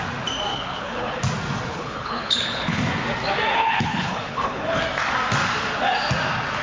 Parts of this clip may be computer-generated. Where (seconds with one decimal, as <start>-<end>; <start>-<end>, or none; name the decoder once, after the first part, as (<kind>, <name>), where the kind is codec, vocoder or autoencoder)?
0.5-1.2 (codec, HILCodec); 1.7-2.8; 3.5-4.8